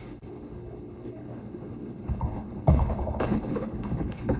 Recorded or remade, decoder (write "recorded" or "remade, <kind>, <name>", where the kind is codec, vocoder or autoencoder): remade, codec, HILCodec